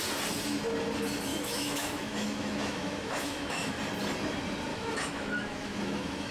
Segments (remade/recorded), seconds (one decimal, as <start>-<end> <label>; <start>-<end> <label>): 0.0-1.3 recorded; 1.3-3.8 remade; 3.8-4.7 recorded; 4.7-6.3 remade